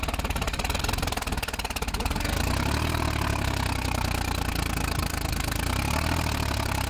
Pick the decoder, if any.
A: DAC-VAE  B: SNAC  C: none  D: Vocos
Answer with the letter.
C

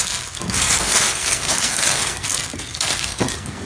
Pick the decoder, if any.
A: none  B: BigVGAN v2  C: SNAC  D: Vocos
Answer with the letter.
C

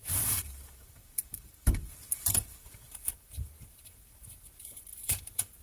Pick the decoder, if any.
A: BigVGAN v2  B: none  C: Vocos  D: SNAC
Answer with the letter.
A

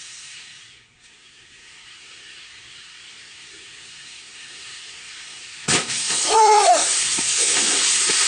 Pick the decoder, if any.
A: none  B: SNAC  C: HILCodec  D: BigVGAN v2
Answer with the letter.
B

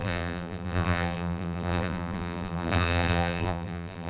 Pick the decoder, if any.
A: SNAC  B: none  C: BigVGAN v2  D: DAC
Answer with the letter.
C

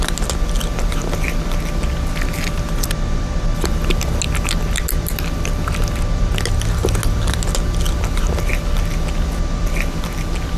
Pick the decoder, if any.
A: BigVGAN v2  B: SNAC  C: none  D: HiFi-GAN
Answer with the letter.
C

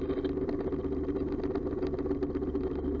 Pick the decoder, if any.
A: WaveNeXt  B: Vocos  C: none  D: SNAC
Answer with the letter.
C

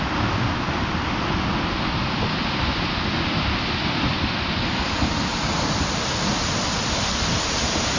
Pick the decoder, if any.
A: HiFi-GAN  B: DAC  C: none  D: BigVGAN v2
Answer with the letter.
C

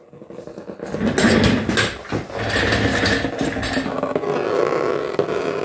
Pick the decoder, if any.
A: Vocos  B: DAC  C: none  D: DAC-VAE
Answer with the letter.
C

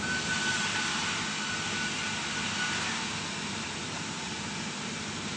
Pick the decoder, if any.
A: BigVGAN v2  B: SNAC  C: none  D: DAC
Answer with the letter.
C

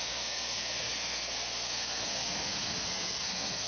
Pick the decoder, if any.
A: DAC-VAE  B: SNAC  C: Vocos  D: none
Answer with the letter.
B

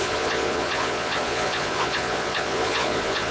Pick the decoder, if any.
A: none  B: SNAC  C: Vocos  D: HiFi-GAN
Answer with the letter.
C